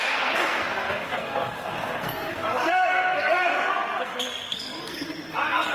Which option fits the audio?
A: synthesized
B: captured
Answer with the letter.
A